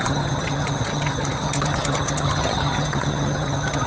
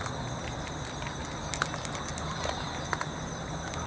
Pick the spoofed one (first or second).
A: first